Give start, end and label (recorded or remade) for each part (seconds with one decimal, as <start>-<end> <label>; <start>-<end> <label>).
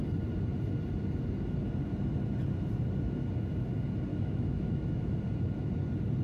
0.0-4.1 recorded; 4.1-5.2 remade; 5.2-6.2 recorded